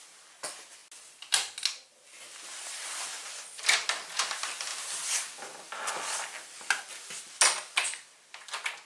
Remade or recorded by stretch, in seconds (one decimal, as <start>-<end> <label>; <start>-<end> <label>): 0.0-8.9 recorded